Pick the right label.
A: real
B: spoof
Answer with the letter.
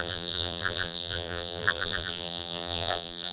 B